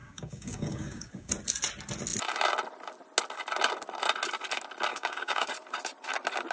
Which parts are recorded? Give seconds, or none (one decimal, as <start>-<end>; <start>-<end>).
1.3-4.9; 5.5-6.5